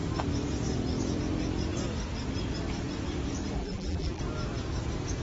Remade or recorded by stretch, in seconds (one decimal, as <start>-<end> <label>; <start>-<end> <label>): 0.0-3.6 recorded; 3.6-4.2 remade; 4.2-5.2 recorded

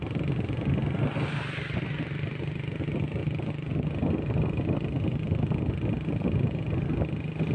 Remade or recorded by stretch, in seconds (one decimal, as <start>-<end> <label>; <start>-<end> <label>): 0.0-7.5 recorded